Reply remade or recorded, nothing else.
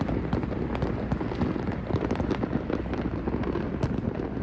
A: recorded